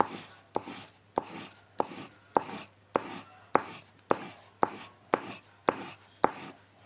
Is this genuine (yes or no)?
yes